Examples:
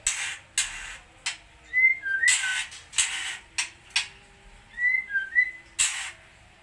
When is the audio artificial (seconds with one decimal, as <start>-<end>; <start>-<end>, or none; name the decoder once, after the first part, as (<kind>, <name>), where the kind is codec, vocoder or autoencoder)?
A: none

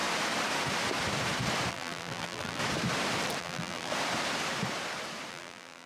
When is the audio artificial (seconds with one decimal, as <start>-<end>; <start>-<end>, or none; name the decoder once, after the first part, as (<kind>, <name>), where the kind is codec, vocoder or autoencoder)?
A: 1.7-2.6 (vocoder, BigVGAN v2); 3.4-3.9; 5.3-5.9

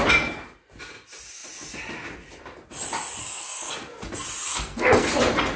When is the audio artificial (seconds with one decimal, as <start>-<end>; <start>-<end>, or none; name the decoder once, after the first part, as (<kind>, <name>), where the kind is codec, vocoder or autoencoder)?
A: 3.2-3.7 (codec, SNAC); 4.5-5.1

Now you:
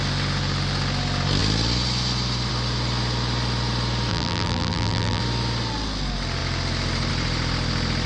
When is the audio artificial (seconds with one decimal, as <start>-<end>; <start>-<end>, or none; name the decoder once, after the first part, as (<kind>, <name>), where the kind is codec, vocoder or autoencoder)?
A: 4.1-5.2 (vocoder, BigVGAN v2)

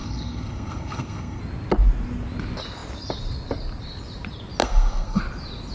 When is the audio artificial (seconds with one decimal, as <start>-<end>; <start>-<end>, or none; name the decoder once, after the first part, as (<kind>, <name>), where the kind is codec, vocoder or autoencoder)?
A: 0.0-1.4 (codec, SNAC); 4.6-5.2

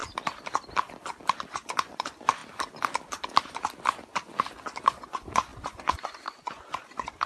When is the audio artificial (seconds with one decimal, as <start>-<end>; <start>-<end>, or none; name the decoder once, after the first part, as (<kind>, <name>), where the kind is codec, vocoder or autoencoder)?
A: 1.5-2.4 (vocoder, Vocos); 4.8-7.3